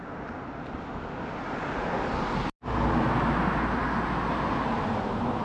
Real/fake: real